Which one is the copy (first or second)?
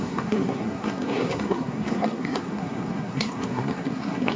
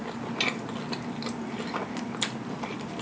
first